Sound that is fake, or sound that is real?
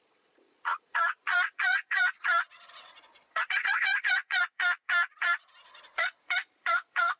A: fake